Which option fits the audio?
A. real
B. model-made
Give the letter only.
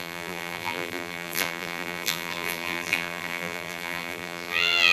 B